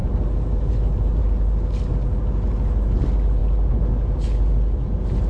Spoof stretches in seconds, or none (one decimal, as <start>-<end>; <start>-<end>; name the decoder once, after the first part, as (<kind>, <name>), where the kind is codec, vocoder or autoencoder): none